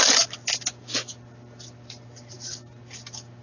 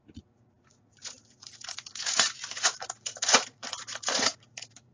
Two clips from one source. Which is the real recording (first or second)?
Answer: first